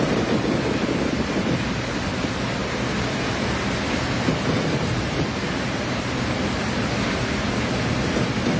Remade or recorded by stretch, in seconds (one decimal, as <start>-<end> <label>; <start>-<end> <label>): 0.0-8.6 recorded